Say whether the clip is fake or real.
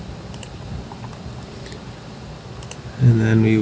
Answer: real